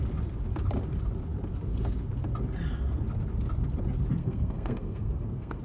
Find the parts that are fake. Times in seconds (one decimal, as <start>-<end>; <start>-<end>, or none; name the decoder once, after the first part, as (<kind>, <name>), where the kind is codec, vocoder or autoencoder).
4.2-5.6 (codec, SNAC)